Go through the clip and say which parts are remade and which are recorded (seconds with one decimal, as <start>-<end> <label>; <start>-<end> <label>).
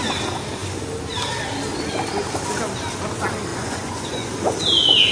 0.0-3.5 recorded; 3.5-4.3 remade; 4.3-5.1 recorded